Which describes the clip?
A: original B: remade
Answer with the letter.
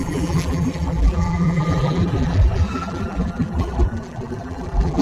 B